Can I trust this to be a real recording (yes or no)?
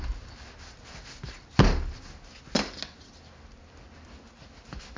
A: yes